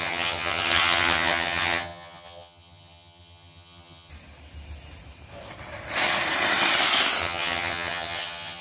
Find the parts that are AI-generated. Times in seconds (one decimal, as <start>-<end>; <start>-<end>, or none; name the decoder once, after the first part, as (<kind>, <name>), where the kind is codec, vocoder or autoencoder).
0.0-4.1 (vocoder, HiFi-GAN); 7.2-8.6